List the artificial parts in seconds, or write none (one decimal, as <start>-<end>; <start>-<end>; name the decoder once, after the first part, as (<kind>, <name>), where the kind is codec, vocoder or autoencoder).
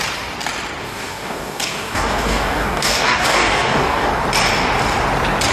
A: 0.8-4.1 (codec, DAC)